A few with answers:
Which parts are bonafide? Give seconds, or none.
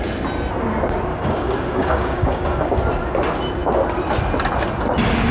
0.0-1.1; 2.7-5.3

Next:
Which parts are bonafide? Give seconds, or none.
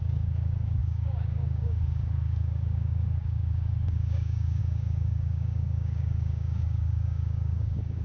none